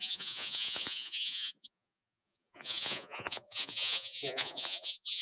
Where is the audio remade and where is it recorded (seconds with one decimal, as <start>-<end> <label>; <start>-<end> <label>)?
0.0-5.2 remade